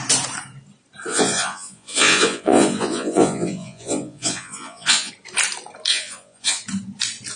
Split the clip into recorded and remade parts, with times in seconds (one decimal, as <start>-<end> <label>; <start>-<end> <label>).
0.0-1.1 recorded; 1.1-5.1 remade; 5.1-5.9 recorded; 5.9-6.6 remade; 6.6-7.4 recorded